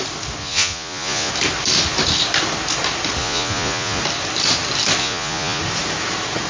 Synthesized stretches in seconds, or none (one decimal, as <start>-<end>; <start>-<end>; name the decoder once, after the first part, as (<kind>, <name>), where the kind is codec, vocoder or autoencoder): 0.4-1.3 (vocoder, Vocos); 3.2-4.0; 5.0-5.6